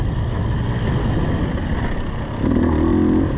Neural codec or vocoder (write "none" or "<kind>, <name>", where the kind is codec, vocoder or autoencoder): none